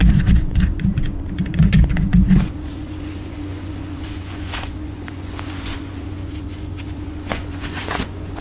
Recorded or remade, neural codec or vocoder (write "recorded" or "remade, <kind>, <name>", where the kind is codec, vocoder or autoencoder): remade, vocoder, Vocos